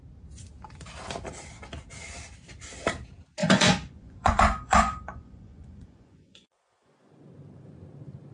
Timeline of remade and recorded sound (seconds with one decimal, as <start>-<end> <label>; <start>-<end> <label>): 0.0-3.4 recorded; 3.4-7.1 remade; 7.1-8.3 recorded